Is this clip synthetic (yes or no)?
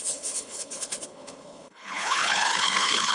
yes